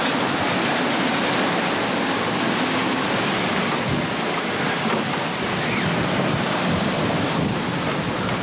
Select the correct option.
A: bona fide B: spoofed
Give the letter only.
A